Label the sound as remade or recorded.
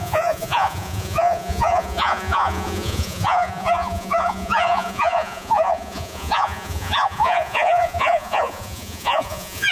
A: remade